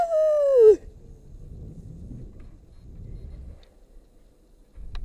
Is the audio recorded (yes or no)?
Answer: yes